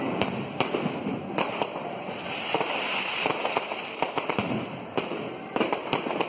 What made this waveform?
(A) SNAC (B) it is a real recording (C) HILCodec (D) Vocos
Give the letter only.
B